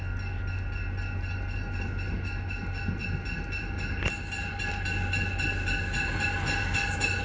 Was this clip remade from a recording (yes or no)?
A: no